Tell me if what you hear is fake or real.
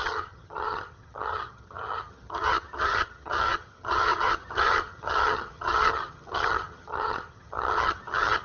fake